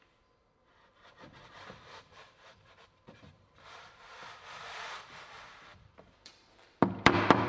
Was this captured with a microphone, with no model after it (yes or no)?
no